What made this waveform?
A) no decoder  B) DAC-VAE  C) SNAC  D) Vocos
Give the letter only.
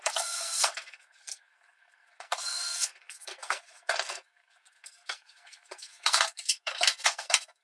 C